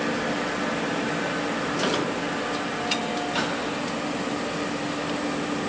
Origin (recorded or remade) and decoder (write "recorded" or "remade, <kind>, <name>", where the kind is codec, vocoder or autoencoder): recorded